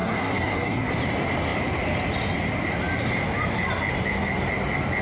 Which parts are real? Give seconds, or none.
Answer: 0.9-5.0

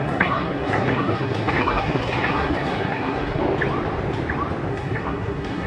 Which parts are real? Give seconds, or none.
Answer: 3.4-4.7

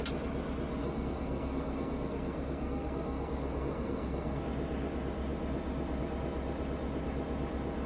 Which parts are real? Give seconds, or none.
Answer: 0.0-0.8; 4.4-7.9

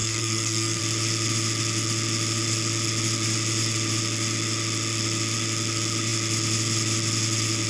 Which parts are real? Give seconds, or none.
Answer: 0.8-7.7

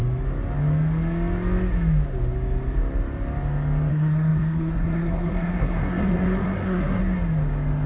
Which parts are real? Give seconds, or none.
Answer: 0.0-3.9; 7.0-7.9